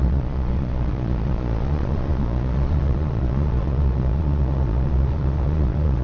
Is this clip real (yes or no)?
no